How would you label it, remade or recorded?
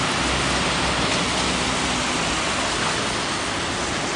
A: recorded